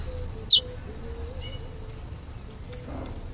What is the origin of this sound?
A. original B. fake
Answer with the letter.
A